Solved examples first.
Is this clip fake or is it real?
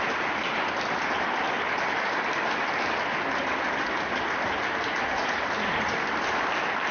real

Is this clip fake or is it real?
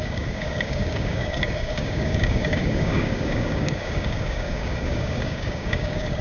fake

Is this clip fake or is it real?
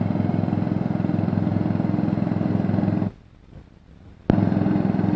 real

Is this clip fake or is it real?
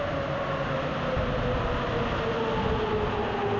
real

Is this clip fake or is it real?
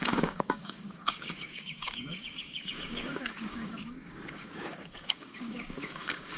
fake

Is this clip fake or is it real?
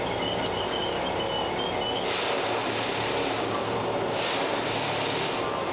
real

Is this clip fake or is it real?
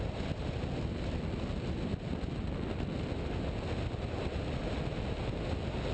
real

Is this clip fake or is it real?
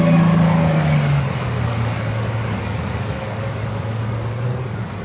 fake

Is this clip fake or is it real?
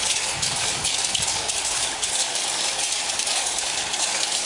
fake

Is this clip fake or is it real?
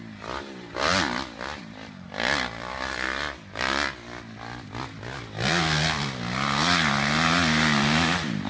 real